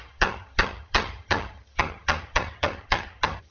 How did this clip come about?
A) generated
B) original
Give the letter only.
A